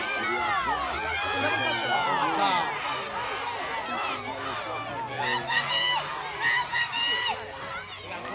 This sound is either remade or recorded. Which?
recorded